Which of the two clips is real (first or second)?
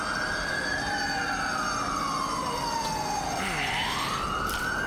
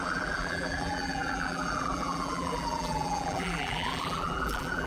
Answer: first